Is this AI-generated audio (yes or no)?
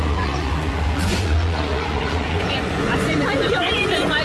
yes